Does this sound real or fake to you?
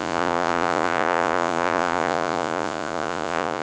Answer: fake